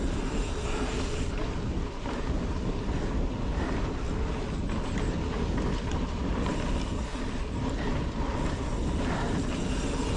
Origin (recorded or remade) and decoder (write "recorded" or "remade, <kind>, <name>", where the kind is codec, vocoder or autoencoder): recorded